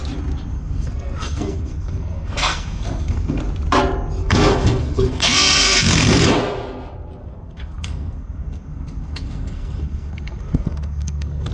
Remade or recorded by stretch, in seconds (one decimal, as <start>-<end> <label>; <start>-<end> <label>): 0.0-0.5 recorded; 0.5-3.4 remade; 3.4-4.2 recorded; 4.2-6.2 remade; 6.2-7.2 recorded; 7.2-11.5 remade

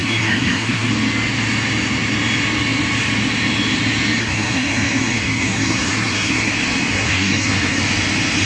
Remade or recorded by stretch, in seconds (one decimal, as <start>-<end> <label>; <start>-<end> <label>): 0.0-0.9 remade; 0.9-4.2 recorded; 4.2-6.5 remade; 6.5-6.9 recorded; 6.9-7.8 remade; 7.8-8.5 recorded